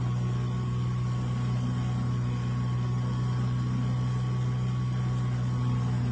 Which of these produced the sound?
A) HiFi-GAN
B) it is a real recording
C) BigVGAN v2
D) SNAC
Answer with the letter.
B